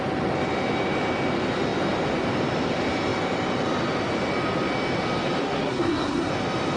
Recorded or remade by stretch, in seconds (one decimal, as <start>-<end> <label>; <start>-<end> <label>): 0.0-5.4 recorded; 5.4-6.3 remade; 6.3-6.8 recorded